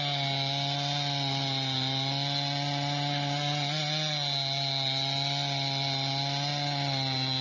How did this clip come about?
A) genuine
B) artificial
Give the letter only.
A